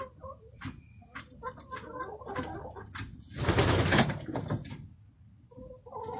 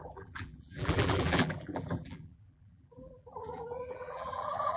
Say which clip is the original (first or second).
first